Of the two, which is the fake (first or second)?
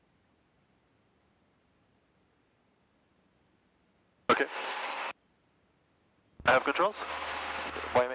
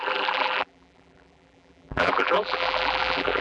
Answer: second